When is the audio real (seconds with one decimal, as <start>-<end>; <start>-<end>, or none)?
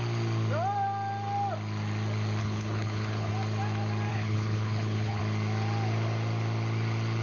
0.0-2.4; 3.3-4.1; 5.2-7.2